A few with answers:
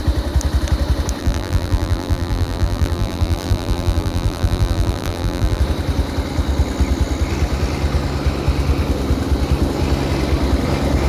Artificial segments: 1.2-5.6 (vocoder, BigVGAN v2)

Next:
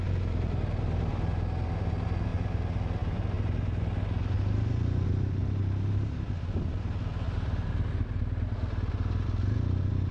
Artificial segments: none